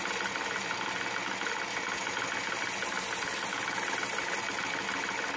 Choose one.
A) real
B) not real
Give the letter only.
A